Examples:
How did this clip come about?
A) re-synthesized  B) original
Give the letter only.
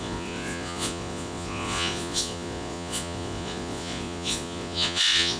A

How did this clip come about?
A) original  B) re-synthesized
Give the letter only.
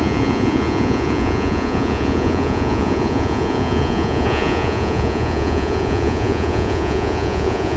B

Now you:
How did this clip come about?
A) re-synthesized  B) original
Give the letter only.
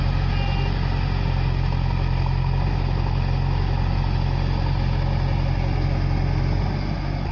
B